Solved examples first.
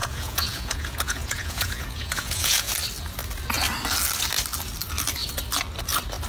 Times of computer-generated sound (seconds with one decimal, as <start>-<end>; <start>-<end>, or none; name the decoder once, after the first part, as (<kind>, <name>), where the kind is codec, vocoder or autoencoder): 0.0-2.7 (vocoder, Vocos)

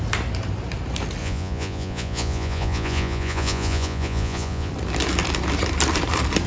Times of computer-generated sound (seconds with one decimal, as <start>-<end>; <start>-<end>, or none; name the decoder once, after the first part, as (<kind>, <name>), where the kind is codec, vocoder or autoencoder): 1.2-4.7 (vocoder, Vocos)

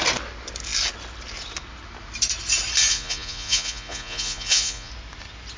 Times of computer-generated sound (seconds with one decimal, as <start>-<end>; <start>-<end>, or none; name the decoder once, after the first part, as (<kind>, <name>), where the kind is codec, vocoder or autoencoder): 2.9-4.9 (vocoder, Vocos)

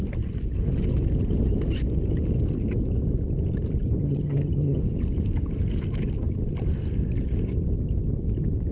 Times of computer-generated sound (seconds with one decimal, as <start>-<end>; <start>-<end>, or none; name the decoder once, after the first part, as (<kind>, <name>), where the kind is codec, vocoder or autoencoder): 4.0-4.8 (vocoder, HiFi-GAN)